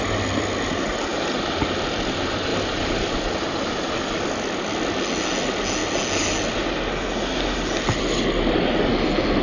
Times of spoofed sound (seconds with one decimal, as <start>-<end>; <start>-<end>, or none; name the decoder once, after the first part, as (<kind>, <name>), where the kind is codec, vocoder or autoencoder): 2.5-4.6 (vocoder, BigVGAN v2)